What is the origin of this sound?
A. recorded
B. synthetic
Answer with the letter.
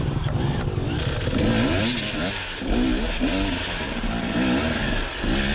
A